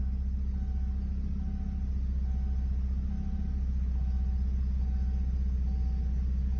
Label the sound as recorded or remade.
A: recorded